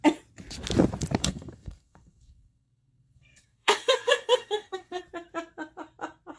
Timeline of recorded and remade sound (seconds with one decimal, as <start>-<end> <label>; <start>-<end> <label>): 0.0-1.2 recorded; 1.2-5.0 remade; 5.0-6.4 recorded